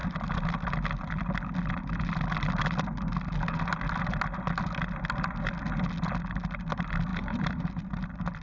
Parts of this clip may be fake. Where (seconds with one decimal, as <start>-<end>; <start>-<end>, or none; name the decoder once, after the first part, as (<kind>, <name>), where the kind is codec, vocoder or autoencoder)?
7.1-7.9 (vocoder, BigVGAN v2)